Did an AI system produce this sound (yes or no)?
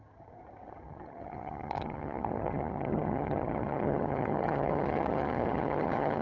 yes